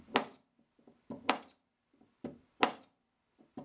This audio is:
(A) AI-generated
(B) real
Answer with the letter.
B